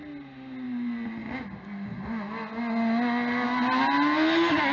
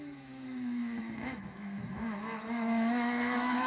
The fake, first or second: second